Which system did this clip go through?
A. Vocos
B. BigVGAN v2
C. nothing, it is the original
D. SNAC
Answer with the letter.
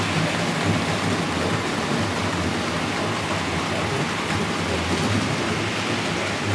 C